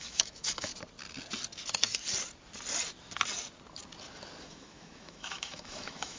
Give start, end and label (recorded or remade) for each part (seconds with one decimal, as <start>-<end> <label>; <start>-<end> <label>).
0.0-0.7 remade; 0.7-4.4 recorded; 4.4-6.2 remade